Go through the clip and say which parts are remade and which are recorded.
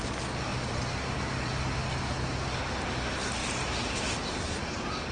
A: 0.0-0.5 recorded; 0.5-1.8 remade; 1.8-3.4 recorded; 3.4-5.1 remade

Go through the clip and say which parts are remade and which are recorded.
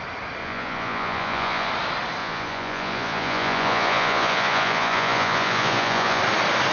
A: 0.0-0.4 recorded; 0.4-1.7 remade; 1.7-2.2 recorded; 2.2-6.2 remade; 6.2-6.7 recorded